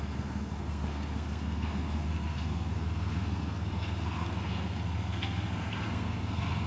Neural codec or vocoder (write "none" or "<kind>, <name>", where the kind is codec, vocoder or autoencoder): codec, SNAC